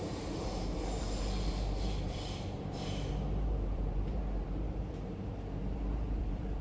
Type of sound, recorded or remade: remade